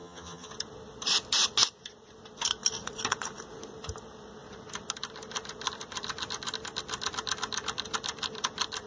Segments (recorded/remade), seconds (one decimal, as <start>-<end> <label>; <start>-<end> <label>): 0.0-0.5 remade; 0.5-8.9 recorded